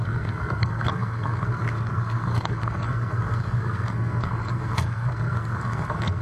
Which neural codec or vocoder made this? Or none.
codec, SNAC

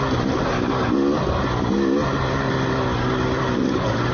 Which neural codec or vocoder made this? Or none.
none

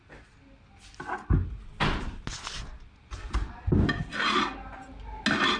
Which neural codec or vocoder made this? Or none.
none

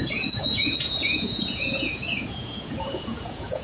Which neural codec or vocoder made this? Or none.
vocoder, Vocos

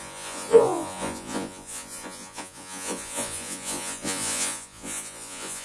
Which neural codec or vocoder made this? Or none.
vocoder, Vocos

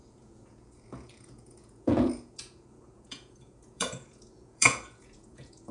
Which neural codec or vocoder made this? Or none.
vocoder, Vocos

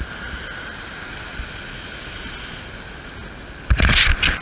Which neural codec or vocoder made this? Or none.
none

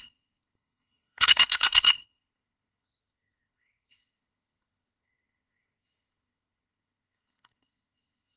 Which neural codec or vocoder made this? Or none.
codec, SNAC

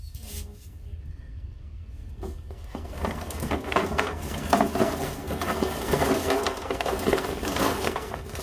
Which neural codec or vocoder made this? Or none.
codec, SNAC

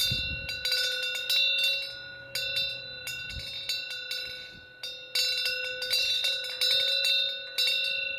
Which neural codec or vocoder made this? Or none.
none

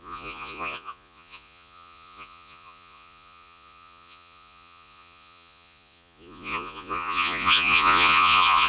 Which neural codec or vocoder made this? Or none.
vocoder, Vocos